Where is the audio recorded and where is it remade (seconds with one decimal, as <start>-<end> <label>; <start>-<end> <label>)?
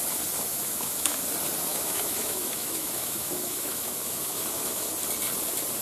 0.0-0.5 recorded; 0.5-1.2 remade; 1.2-1.7 recorded; 1.7-4.9 remade; 4.9-5.8 recorded